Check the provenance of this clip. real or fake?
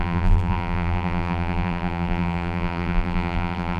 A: fake